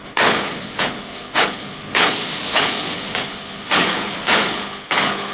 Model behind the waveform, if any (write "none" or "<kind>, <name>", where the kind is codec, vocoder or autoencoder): codec, HILCodec